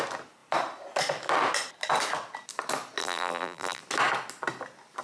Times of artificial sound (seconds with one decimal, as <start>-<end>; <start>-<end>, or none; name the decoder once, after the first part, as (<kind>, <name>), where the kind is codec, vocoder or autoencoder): 3.0-3.8 (vocoder, BigVGAN v2)